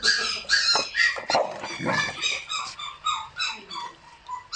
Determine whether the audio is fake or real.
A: real